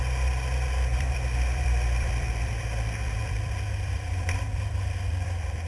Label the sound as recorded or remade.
remade